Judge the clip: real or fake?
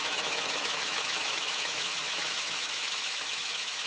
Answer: fake